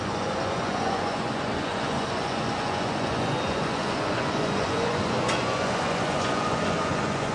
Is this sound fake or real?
fake